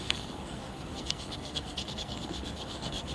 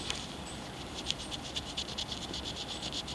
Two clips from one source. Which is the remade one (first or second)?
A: first